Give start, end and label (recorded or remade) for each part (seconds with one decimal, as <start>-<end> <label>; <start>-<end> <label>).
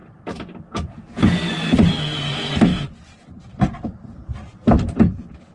0.0-5.5 recorded